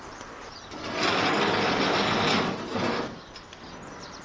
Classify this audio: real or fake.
real